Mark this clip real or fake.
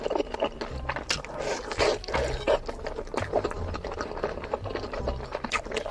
real